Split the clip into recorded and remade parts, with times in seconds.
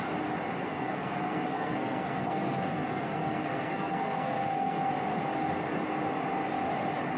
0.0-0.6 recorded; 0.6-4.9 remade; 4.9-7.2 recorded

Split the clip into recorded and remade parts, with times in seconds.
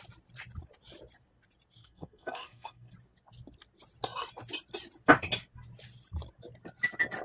0.0-1.8 recorded; 1.8-2.9 remade; 2.9-7.2 recorded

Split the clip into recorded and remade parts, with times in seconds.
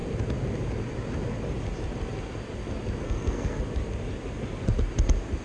0.0-3.0 recorded; 3.0-3.6 remade; 3.6-5.4 recorded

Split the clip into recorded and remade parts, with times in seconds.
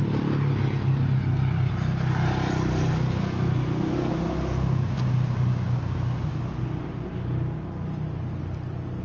0.0-3.2 recorded; 3.2-4.1 remade; 4.1-9.0 recorded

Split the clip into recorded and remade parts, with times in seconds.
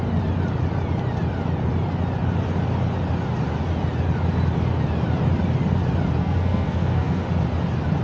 0.0-6.2 recorded; 6.2-7.2 remade; 7.2-8.0 recorded